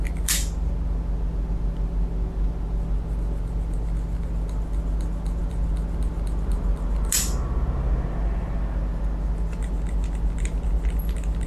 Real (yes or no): yes